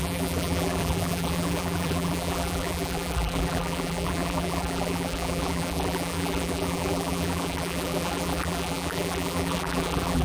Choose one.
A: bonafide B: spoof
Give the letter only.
B